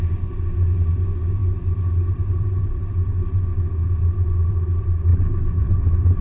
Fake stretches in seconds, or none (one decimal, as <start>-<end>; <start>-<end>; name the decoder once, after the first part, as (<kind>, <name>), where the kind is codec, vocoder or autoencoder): none